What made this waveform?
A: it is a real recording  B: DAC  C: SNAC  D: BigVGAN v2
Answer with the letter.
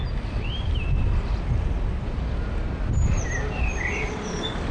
A